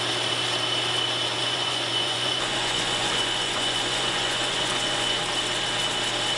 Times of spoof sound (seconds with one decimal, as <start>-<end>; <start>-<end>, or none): 1.4-5.2